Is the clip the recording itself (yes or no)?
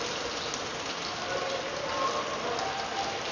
yes